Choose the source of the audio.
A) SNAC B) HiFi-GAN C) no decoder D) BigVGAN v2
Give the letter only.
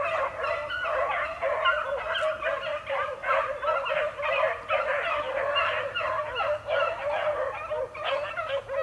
C